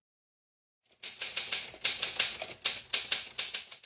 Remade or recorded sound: recorded